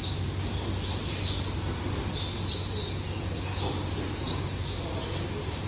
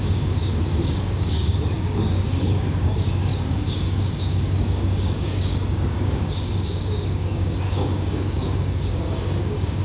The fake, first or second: second